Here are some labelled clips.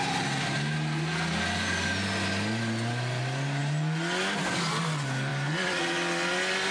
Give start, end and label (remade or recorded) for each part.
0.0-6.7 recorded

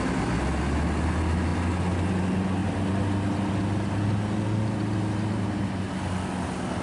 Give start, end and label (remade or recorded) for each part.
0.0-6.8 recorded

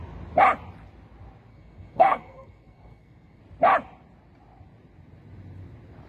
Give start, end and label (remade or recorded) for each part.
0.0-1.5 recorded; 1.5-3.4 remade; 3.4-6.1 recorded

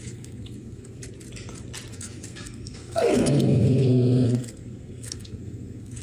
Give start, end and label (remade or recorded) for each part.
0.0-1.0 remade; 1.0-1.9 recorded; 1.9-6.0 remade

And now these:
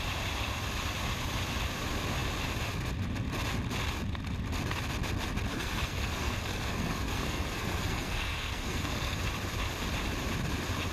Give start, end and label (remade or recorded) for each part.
0.0-5.5 recorded; 5.5-9.2 remade; 9.2-10.9 recorded